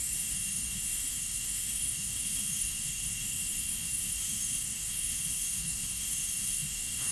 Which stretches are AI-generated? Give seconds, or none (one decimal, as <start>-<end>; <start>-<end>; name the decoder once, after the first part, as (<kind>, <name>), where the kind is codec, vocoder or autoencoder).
0.0-7.1 (autoencoder, DAC-VAE)